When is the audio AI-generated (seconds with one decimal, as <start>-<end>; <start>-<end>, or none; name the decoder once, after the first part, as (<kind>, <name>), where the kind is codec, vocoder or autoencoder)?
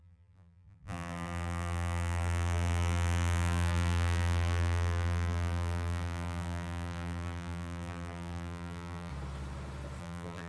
0.0-9.1 (vocoder, BigVGAN v2); 10.0-10.5